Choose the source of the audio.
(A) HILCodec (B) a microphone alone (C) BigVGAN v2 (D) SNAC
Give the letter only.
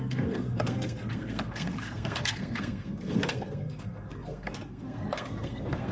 D